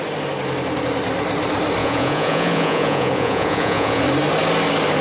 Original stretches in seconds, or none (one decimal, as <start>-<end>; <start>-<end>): 0.0-1.8; 4.0-5.0